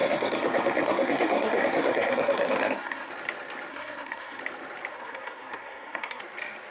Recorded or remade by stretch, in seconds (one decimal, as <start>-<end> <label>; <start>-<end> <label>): 0.0-3.1 remade; 3.1-3.7 recorded; 3.7-4.4 remade; 4.4-4.9 recorded; 4.9-6.2 remade; 6.2-6.7 recorded